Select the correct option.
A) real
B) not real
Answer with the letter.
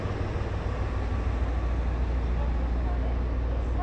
A